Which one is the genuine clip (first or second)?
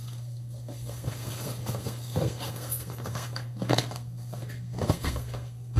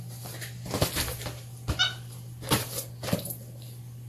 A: second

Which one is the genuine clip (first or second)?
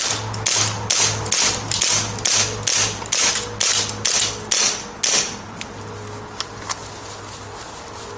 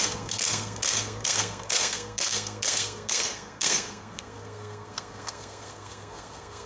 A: first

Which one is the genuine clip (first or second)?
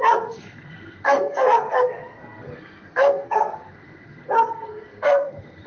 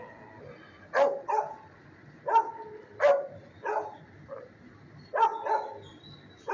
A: second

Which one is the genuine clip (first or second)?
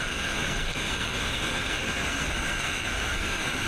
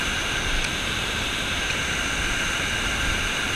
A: second